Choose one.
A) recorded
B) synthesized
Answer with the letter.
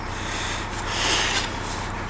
A